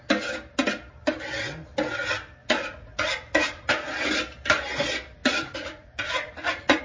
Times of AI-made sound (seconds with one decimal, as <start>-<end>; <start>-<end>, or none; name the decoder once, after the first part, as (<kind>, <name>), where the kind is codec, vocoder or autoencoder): 2.4-3.7 (vocoder, Vocos); 5.2-6.8